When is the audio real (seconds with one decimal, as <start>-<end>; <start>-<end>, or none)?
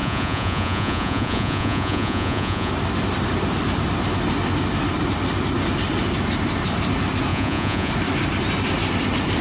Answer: 2.7-7.3; 7.9-9.4